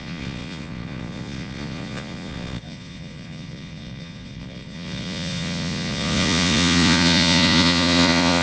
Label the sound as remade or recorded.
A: remade